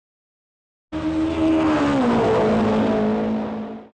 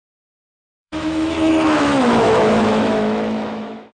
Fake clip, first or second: second